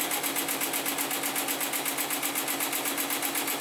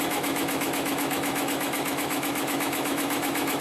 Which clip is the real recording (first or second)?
first